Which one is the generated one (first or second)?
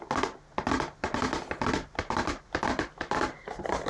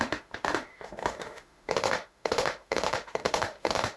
second